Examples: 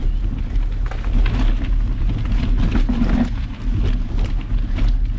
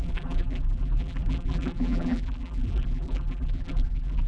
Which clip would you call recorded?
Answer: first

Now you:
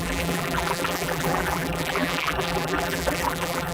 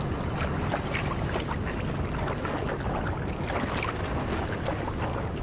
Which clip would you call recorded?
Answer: second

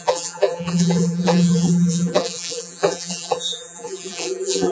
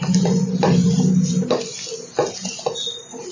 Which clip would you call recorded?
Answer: second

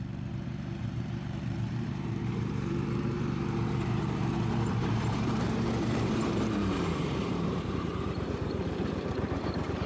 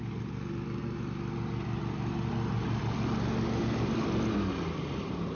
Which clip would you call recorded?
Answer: second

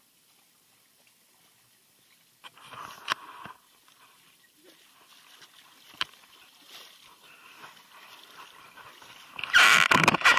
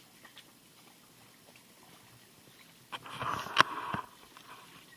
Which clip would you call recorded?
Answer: second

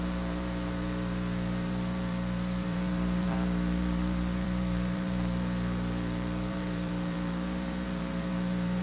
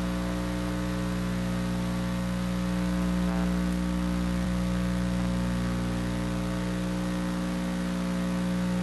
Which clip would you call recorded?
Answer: second